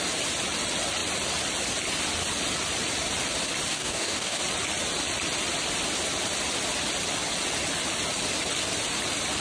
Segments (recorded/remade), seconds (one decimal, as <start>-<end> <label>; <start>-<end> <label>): 0.0-3.7 recorded; 3.7-4.4 remade; 4.4-9.4 recorded

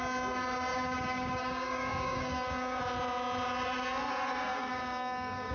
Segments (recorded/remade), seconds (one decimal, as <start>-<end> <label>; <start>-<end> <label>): 0.0-0.7 recorded; 0.7-2.8 remade; 2.8-4.5 recorded; 4.5-5.5 remade

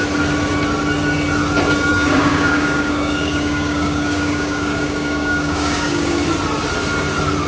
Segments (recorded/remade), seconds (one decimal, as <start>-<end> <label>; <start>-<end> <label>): 0.0-1.9 recorded; 1.9-6.2 remade; 6.2-7.5 recorded

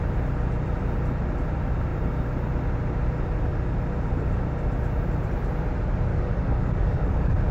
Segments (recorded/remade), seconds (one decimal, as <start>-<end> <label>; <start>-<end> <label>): 0.0-6.1 recorded; 6.1-7.5 remade

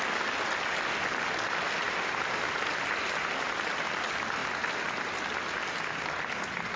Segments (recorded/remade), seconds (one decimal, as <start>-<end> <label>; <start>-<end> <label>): 0.0-6.8 recorded

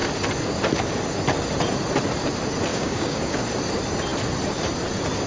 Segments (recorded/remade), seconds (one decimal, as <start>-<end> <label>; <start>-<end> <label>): 0.0-2.7 recorded; 2.7-3.4 remade; 3.4-5.3 recorded

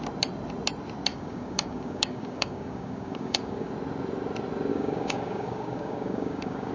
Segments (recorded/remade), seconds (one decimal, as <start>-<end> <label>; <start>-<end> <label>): 0.0-1.1 recorded; 1.1-3.7 remade; 3.7-4.7 recorded; 4.7-6.7 remade